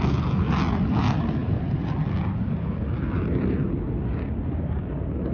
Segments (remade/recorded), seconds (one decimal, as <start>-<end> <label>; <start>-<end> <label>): 0.0-5.3 recorded

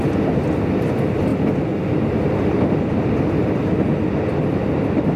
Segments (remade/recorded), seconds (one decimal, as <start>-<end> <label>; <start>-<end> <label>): 0.0-5.2 recorded

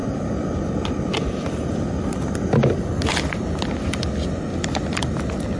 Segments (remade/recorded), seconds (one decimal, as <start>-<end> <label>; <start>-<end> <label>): 0.0-4.5 recorded; 4.5-5.1 remade; 5.1-5.6 recorded

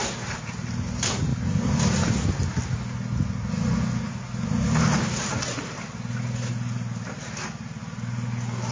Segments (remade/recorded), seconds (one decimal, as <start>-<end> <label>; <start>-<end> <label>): 0.0-0.6 recorded; 0.6-1.3 remade; 1.3-6.5 recorded; 6.5-7.8 remade; 7.8-8.7 recorded

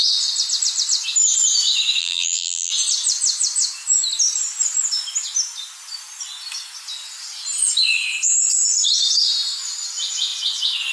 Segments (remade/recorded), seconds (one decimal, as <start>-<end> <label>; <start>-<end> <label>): 0.0-2.0 recorded; 2.0-2.7 remade; 2.7-10.9 recorded

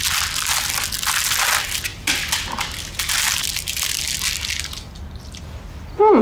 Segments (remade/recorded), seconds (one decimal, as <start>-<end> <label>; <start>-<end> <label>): 0.0-6.2 recorded

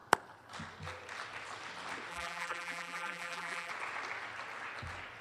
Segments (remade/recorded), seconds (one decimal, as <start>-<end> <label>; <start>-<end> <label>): 0.0-2.1 recorded; 2.1-3.7 remade; 3.7-5.2 recorded

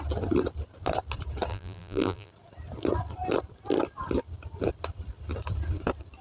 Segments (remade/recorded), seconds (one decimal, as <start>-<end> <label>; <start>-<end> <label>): 0.0-1.5 recorded; 1.5-2.3 remade; 2.3-6.2 recorded